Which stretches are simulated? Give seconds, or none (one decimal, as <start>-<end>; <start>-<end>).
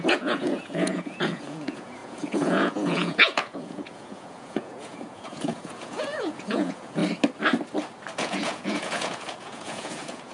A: 0.0-7.0; 8.2-10.3